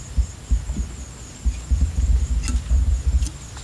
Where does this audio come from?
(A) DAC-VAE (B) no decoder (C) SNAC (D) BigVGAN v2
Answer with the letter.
B